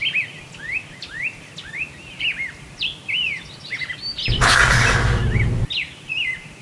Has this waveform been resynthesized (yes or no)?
no